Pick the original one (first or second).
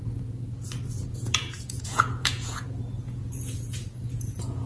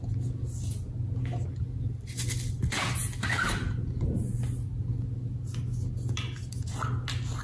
second